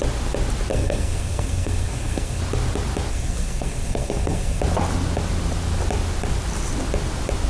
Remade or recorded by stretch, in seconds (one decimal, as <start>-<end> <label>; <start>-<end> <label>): 0.0-0.7 recorded; 0.7-2.4 remade; 2.4-3.1 recorded; 3.1-4.6 remade; 4.6-7.5 recorded